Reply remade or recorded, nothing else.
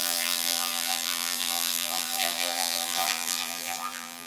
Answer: remade